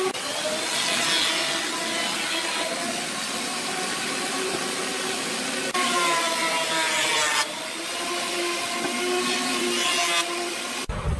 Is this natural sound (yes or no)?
yes